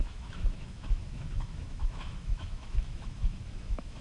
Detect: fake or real fake